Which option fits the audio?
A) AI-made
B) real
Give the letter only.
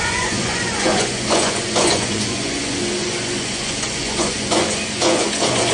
A